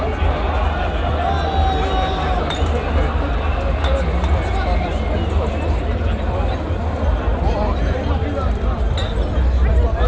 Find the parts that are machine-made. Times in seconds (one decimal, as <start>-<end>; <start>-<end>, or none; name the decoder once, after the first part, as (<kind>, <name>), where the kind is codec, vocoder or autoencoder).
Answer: none